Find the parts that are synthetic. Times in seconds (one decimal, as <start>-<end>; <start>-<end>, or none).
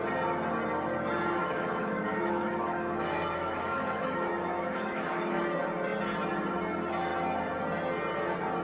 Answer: 1.4-5.4